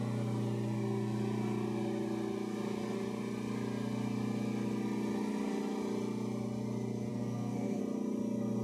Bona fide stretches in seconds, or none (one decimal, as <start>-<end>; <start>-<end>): 0.0-7.1; 7.8-8.6

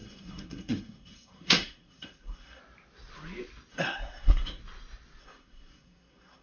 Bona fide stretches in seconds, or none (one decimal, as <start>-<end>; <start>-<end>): 2.6-3.7; 4.6-5.2

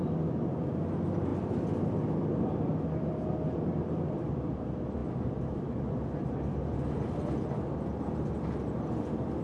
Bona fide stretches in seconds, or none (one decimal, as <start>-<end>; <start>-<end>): 0.0-9.4

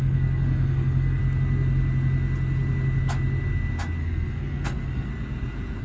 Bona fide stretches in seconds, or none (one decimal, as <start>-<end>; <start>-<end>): 1.2-4.0; 5.1-5.8

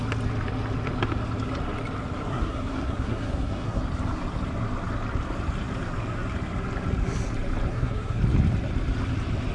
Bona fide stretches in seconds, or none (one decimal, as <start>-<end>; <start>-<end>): 0.0-2.3; 3.8-7.7; 8.2-9.5

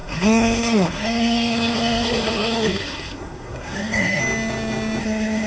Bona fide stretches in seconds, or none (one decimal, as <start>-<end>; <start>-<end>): 4.2-5.0

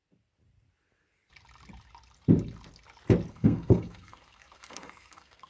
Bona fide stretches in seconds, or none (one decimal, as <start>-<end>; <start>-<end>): 0.0-3.3

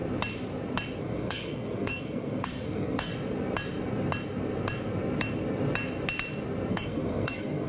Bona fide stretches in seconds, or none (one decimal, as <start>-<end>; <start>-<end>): 0.0-1.0; 3.1-6.7